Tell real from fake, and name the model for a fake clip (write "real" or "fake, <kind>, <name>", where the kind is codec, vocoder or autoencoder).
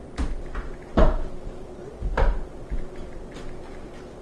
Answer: fake, vocoder, BigVGAN v2